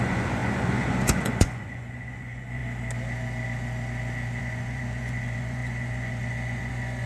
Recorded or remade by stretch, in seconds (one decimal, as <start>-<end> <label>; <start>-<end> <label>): 0.0-2.6 remade; 2.6-4.4 recorded; 4.4-7.1 remade